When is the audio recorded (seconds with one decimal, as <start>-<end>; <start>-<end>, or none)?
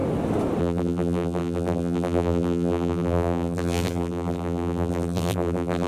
0.0-0.6